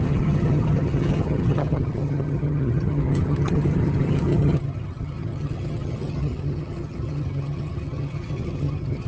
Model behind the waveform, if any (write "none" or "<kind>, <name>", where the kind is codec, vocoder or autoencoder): vocoder, HiFi-GAN